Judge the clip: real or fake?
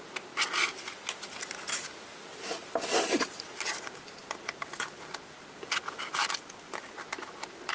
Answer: real